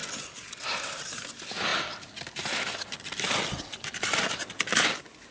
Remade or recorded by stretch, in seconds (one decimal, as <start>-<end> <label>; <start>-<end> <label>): 0.0-5.3 recorded